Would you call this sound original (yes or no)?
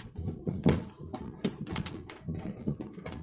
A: no